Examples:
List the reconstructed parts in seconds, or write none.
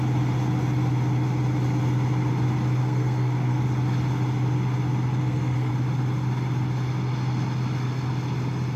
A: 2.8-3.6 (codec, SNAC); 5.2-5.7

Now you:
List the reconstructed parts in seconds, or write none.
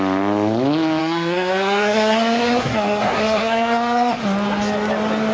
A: 1.0-4.2 (codec, SNAC)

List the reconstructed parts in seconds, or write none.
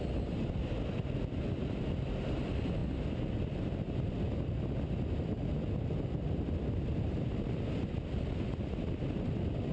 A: none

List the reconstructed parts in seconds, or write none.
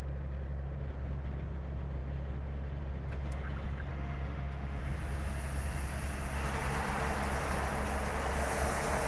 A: 3.9-4.8 (autoencoder, DAC-VAE)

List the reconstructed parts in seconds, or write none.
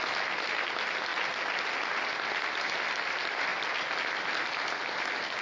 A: none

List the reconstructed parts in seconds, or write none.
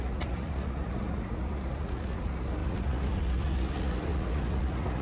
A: 0.0-5.0 (vocoder, Vocos)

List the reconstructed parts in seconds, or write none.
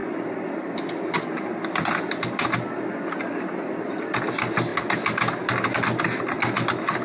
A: none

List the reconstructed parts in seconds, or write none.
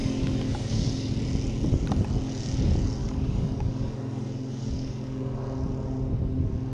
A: 0.0-0.9 (codec, DAC); 3.0-5.4